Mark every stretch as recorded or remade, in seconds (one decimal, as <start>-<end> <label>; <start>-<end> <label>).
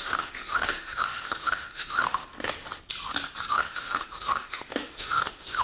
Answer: 0.0-2.3 remade; 2.3-3.5 recorded; 3.5-5.6 remade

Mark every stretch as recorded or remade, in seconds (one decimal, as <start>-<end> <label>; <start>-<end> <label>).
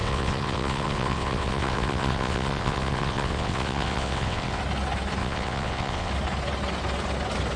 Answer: 0.0-4.6 remade; 4.6-5.2 recorded; 5.2-6.1 remade; 6.1-7.6 recorded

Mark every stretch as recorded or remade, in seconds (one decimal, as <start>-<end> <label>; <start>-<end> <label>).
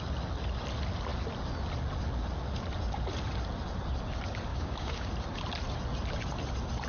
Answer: 0.0-4.5 recorded; 4.5-5.1 remade; 5.1-6.9 recorded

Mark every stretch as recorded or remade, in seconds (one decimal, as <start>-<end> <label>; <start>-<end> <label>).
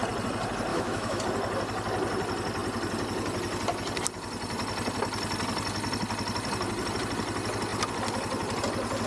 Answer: 0.0-0.7 recorded; 0.7-1.2 remade; 1.2-9.1 recorded